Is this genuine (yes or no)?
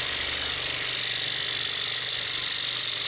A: no